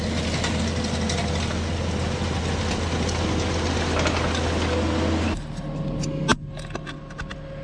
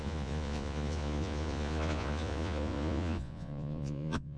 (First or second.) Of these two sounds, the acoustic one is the first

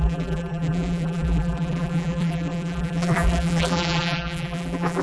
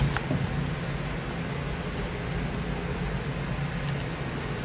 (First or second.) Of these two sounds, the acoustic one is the second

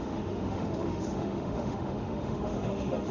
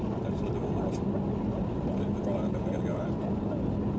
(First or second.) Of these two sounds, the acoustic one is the second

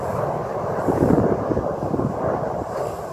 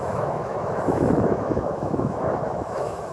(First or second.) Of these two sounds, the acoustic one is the first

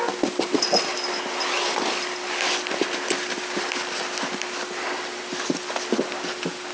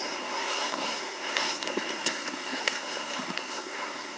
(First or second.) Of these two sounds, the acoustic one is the first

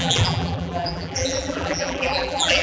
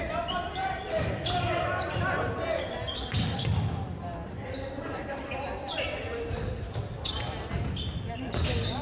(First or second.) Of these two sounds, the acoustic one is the second